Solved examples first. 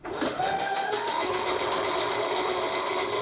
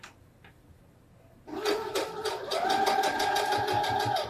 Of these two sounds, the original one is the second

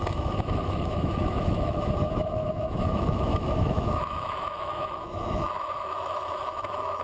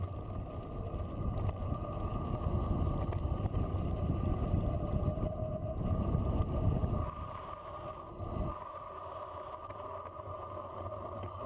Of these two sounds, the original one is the second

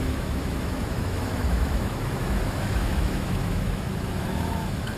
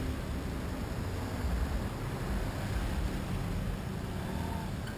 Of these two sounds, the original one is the second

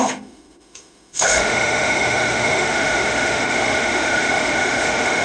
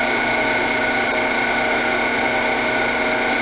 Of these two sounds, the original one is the second